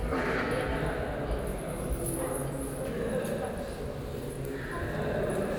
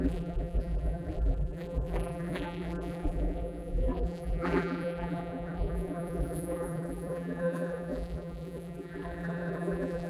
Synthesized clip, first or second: second